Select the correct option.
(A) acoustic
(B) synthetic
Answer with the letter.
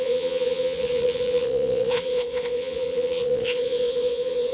B